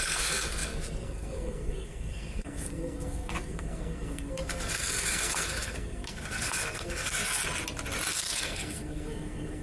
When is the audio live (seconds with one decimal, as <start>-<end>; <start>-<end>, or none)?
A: 7.4-8.1